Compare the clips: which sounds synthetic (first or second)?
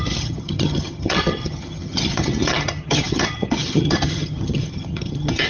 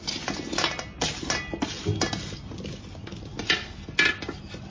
first